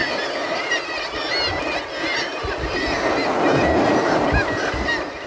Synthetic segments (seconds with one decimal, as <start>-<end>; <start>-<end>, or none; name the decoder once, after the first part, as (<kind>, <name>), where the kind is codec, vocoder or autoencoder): 0.0-0.8 (vocoder, BigVGAN v2); 2.3-5.3